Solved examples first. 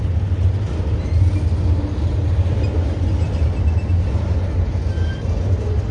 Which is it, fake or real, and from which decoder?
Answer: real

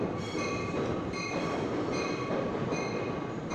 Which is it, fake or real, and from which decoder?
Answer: real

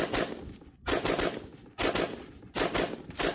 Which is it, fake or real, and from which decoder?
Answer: real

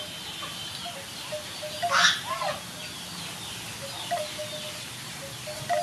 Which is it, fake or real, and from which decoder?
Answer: real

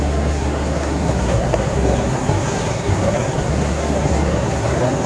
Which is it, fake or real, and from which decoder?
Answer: fake, codec, SNAC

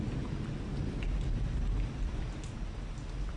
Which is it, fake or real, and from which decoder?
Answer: real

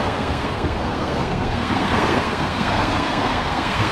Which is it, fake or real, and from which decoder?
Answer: fake, codec, SNAC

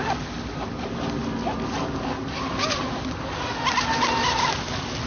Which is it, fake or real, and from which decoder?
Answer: real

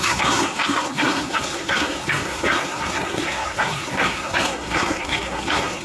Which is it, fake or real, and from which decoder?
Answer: fake, codec, SNAC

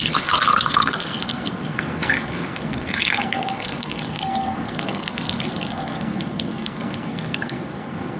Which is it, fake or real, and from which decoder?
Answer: fake, codec, SNAC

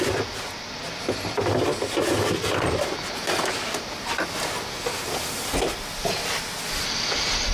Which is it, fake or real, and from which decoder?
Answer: real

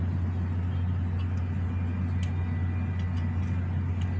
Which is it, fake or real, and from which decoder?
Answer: real